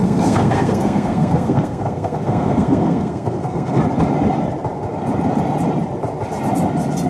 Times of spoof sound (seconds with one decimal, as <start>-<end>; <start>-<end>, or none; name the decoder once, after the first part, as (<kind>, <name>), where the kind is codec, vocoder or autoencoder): 0.0-3.8 (codec, SNAC)